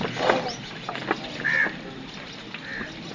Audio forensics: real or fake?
real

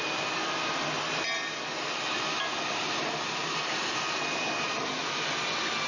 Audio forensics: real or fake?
real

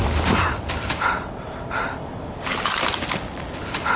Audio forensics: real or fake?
real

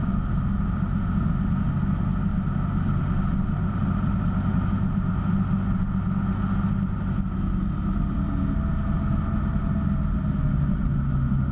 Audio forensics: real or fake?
real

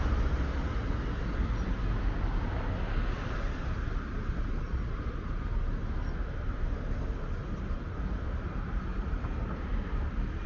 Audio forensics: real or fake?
real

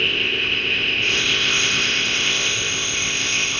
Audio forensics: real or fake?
fake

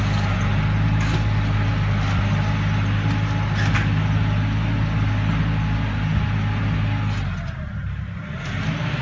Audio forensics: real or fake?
real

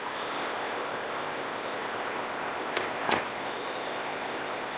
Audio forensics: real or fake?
fake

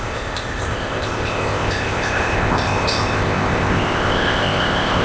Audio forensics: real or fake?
fake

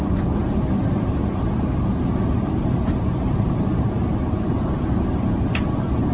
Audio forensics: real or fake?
real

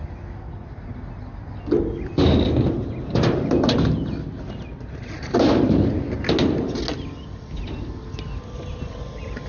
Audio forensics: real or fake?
real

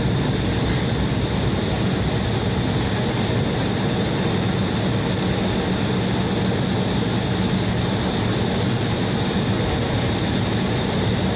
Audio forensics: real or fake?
real